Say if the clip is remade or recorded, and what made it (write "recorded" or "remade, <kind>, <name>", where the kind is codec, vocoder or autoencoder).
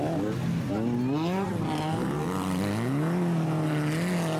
recorded